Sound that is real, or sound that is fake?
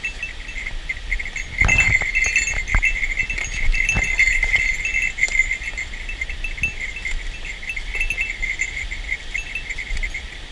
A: real